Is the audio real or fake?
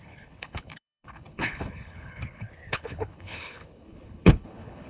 fake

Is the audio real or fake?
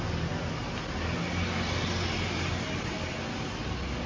real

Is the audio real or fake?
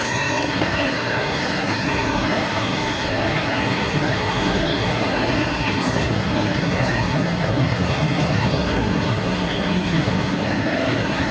fake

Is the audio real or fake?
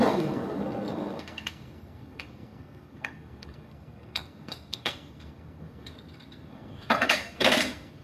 fake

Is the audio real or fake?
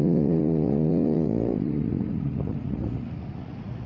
fake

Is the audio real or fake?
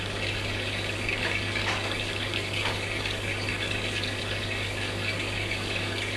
fake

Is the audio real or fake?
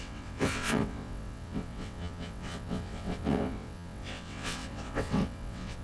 fake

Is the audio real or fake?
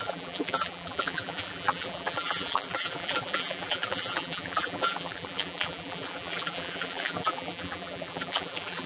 fake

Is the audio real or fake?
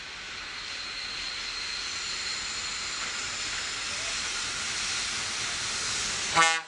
real